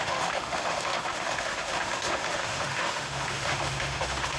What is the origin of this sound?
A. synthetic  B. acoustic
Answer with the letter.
A